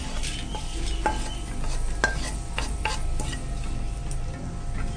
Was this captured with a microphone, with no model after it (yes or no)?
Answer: yes